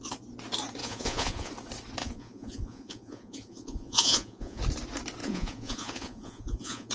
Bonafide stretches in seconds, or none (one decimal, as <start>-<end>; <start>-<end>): 0.0-0.8; 1.5-2.0; 4.6-5.2